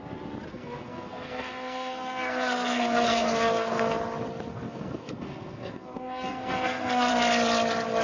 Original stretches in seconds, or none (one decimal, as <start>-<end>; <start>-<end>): 0.0-0.5; 4.0-4.5; 7.1-8.0